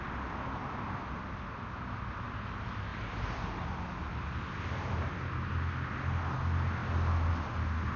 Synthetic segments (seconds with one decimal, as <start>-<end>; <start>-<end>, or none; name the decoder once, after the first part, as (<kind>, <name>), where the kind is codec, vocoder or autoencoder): 0.6-1.7 (vocoder, BigVGAN v2); 2.9-4.2